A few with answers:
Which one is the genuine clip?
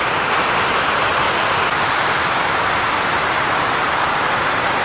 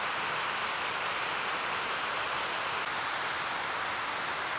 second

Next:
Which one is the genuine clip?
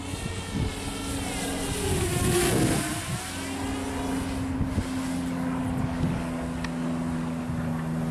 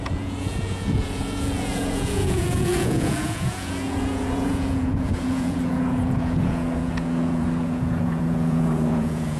first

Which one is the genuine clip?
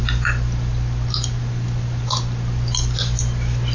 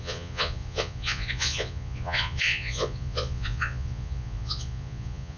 first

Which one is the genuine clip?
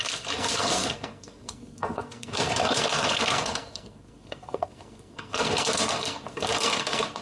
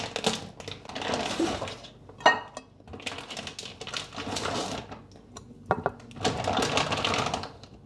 second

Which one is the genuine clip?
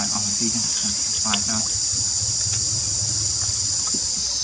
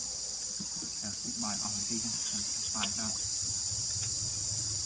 first